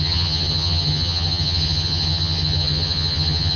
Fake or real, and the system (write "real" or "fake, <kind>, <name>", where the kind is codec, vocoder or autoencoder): fake, vocoder, HiFi-GAN